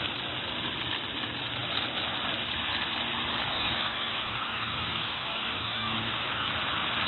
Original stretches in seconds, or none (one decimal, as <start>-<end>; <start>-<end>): 0.0-3.5; 6.5-7.1